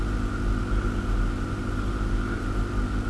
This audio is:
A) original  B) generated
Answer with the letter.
A